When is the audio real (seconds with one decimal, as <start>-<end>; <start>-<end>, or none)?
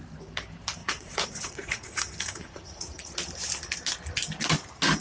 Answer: 0.0-0.8; 3.1-5.0